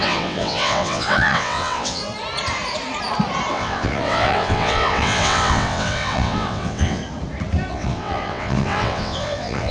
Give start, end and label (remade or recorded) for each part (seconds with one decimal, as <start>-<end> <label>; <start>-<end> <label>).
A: 0.0-2.0 remade; 2.0-3.5 recorded; 3.5-7.0 remade; 7.0-7.7 recorded; 7.7-9.7 remade